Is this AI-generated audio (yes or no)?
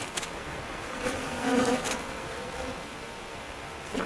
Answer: yes